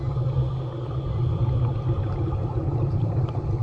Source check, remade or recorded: recorded